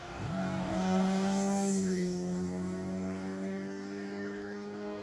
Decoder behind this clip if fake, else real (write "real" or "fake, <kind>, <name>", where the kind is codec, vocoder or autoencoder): fake, codec, DAC